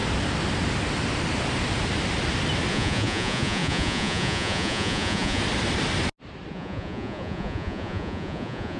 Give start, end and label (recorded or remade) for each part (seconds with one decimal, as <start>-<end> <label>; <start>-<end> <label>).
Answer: 0.0-2.7 recorded; 2.7-5.4 remade; 5.4-6.5 recorded; 6.5-8.8 remade